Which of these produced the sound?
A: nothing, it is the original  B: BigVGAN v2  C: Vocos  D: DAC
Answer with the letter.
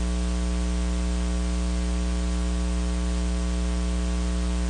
A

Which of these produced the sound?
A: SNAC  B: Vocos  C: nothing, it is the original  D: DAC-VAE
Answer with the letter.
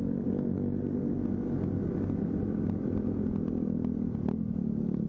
C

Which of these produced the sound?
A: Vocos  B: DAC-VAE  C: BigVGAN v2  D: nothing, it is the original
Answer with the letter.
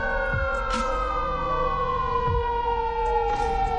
A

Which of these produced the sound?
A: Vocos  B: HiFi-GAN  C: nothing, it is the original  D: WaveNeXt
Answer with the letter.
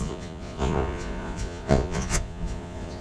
A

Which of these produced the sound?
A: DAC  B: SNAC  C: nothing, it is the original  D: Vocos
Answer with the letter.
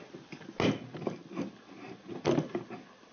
C